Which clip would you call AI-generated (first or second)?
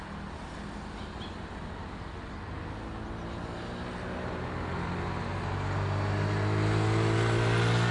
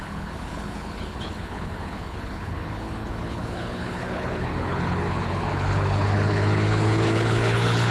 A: second